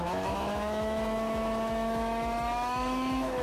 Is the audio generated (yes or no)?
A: yes